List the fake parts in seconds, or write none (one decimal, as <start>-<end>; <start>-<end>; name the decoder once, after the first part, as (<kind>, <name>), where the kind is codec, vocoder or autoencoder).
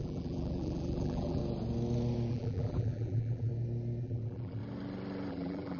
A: 0.0-1.4 (vocoder, BigVGAN v2); 2.3-3.5; 4.0-4.6; 5.3-5.8